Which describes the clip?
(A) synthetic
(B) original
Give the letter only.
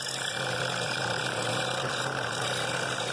A